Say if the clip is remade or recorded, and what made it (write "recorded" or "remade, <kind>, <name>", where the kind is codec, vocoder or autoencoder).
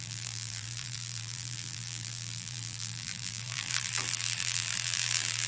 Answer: remade, vocoder, BigVGAN v2